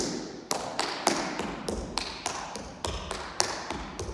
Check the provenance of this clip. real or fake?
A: real